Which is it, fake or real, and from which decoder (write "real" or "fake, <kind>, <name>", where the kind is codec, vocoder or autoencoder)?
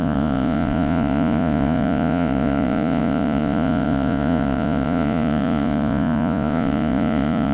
fake, vocoder, Vocos